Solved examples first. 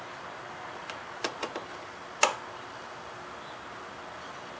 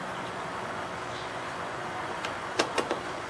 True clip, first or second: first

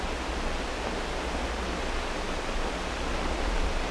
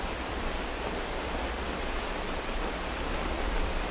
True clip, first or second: first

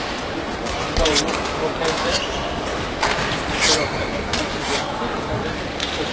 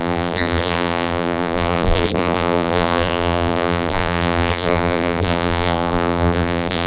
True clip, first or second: first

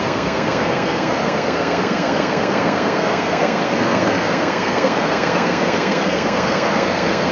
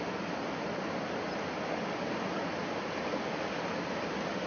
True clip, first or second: second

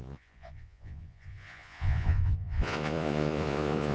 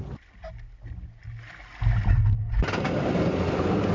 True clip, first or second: second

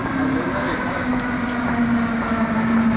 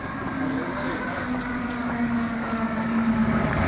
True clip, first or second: first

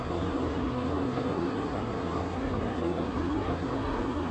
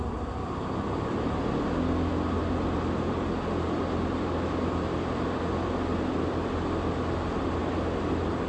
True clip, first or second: second